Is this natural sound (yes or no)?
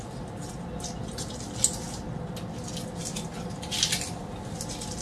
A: yes